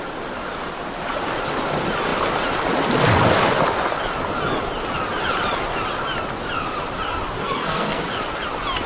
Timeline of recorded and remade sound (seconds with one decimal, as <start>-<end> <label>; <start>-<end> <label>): 0.0-7.4 recorded; 7.4-8.0 remade; 8.0-8.9 recorded